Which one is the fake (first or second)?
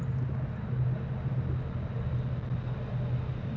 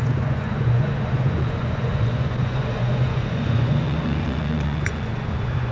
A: second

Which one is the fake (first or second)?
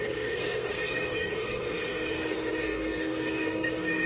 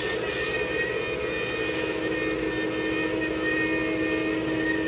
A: first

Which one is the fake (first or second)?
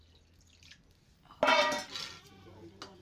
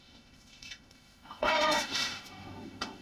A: second